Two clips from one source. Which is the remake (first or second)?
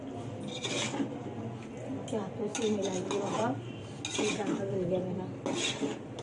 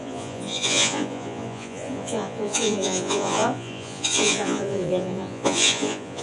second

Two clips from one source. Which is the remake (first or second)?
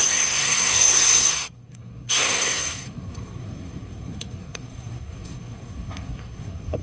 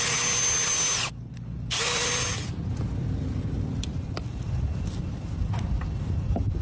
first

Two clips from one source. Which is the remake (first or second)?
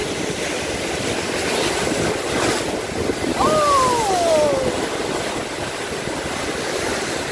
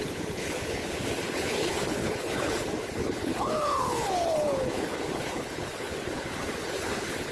second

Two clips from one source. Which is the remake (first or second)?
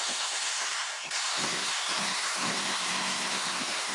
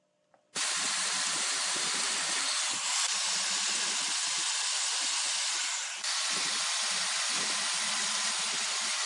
first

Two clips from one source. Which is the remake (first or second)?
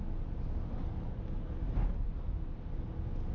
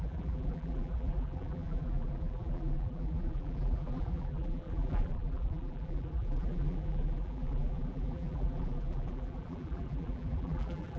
second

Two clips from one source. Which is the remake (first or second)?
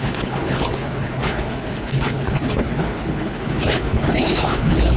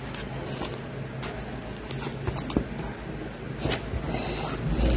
first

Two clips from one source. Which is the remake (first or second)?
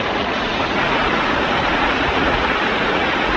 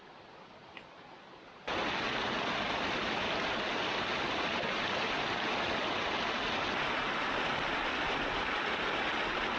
first